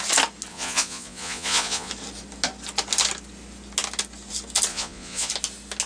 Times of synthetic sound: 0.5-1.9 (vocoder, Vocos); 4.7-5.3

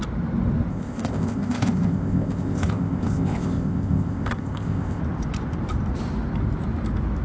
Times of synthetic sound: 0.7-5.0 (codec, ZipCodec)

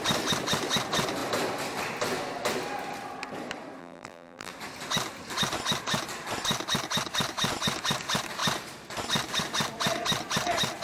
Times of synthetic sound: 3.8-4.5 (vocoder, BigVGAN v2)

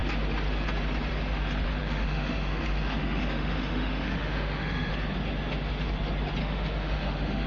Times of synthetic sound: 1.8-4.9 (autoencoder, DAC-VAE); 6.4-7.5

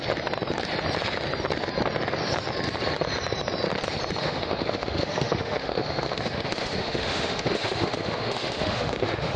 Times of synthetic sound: 4.2-9.4 (autoencoder, DAC-VAE)